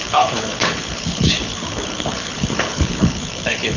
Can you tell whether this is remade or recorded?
remade